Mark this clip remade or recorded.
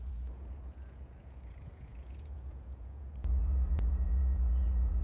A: remade